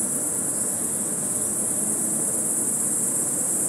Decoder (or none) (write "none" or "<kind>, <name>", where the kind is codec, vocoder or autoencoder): none